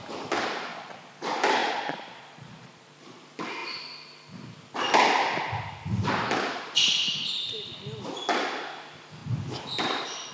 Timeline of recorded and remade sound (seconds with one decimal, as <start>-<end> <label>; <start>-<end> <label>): 0.0-0.7 recorded; 0.7-1.2 remade; 1.2-1.6 recorded; 1.6-3.2 remade; 3.2-10.3 recorded

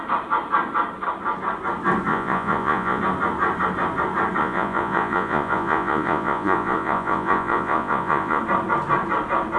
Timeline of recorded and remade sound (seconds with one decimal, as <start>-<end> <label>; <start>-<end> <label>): 0.0-2.1 recorded; 2.1-3.0 remade; 3.0-4.4 recorded; 4.4-8.4 remade; 8.4-9.6 recorded

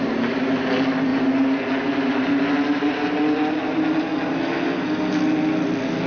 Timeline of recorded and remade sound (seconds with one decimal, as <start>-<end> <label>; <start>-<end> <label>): 0.0-6.1 recorded

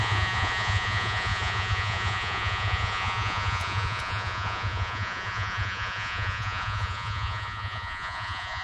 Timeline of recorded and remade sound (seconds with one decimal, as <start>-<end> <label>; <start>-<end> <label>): 0.0-8.6 remade

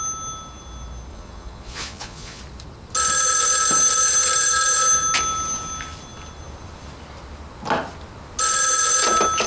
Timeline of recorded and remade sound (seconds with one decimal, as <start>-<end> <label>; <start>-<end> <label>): 0.0-1.1 recorded; 1.1-2.4 remade; 2.4-9.5 recorded